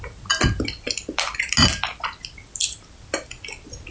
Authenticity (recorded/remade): recorded